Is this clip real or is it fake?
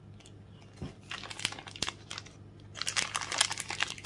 real